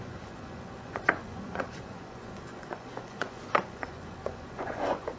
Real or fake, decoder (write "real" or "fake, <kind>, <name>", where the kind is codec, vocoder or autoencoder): fake, vocoder, Vocos